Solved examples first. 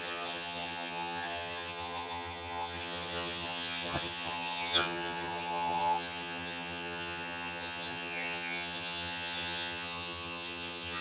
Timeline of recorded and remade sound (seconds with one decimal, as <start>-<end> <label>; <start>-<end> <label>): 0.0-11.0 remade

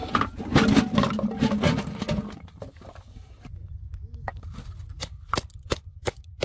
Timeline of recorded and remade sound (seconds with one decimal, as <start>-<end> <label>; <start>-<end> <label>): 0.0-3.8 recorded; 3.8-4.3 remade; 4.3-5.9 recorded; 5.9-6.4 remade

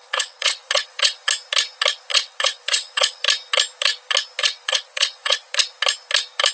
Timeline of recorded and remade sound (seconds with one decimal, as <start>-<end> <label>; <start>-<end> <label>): 0.0-1.3 remade; 1.3-2.1 recorded; 2.1-3.2 remade; 3.2-4.4 recorded; 4.4-5.6 remade; 5.6-6.5 recorded

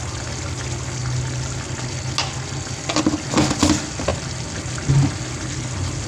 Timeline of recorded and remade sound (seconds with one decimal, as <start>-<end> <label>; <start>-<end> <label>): 0.0-6.1 recorded

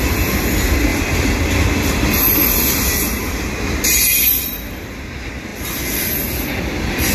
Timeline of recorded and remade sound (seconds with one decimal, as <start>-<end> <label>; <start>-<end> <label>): 0.0-7.1 recorded